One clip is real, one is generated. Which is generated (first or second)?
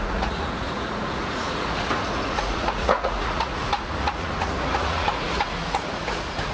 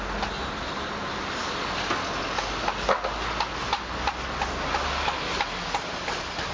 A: first